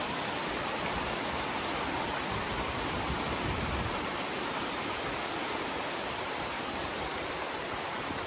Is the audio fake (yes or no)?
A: yes